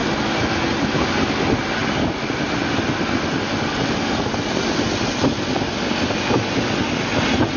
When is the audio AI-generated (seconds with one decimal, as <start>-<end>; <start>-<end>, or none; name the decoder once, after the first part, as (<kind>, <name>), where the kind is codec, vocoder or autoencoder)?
none